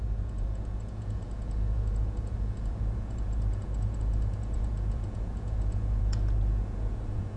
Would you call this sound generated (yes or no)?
yes